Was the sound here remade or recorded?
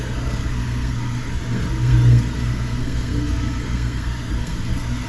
remade